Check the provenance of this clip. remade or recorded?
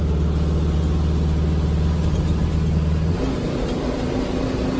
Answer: recorded